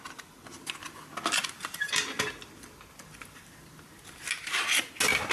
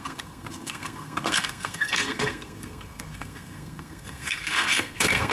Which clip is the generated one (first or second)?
second